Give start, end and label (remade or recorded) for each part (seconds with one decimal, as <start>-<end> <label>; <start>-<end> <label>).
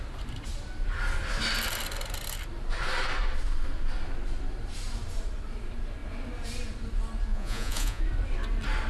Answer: 0.0-7.3 recorded; 7.3-8.0 remade; 8.0-8.9 recorded